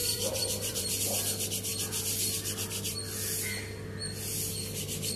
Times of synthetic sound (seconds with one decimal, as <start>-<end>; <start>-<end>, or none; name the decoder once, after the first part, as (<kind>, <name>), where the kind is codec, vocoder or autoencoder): 0.0-1.0 (vocoder, BigVGAN v2)